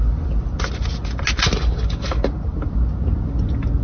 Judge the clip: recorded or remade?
recorded